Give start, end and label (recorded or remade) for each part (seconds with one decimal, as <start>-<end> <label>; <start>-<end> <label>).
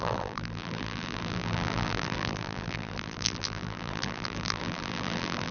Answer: 0.0-5.5 remade